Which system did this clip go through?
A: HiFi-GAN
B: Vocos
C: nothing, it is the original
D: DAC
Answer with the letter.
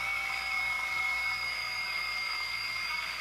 D